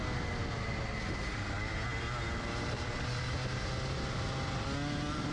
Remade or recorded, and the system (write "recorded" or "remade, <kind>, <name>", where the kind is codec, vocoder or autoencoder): recorded